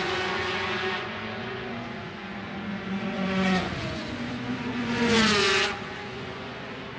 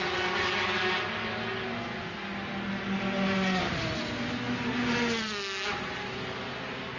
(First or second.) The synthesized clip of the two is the first